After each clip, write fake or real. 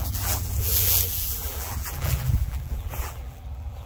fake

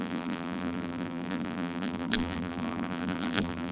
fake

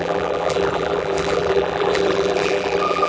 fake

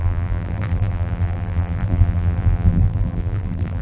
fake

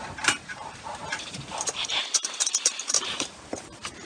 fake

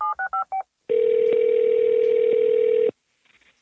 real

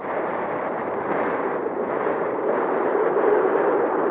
fake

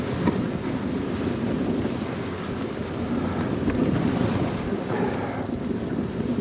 real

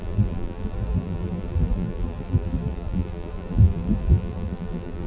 fake